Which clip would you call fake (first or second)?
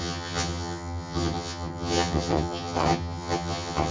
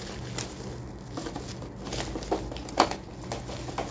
first